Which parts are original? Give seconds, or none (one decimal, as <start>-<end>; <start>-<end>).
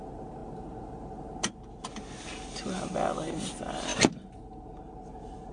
0.0-5.5